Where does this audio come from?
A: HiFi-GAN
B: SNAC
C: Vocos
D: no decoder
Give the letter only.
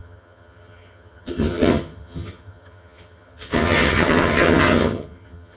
A